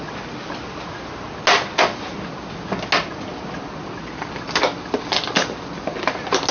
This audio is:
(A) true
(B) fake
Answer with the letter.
A